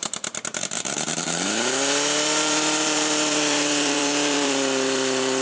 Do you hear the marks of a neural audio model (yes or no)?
yes